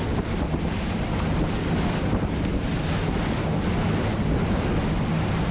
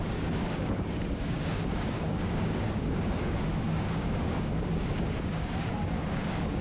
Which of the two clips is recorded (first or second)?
first